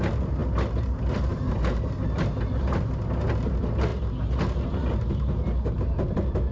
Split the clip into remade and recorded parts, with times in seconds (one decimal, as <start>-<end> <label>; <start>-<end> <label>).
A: 0.0-6.5 recorded